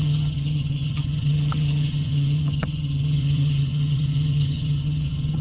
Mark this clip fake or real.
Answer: fake